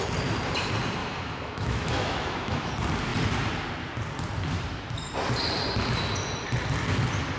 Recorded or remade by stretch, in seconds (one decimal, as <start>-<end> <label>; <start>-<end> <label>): 0.0-1.0 recorded; 1.0-2.7 remade; 2.7-7.4 recorded